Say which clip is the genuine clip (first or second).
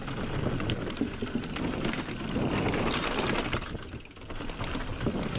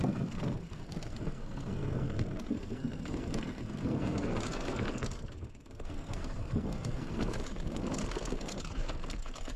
first